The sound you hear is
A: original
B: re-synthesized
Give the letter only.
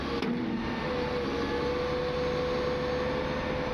A